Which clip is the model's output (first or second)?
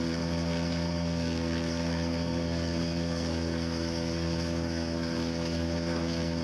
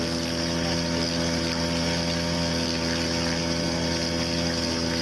first